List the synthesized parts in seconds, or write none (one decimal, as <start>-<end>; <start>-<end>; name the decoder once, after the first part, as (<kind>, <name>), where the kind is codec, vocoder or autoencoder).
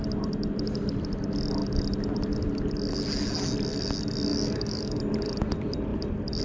4.3-5.0 (codec, DAC)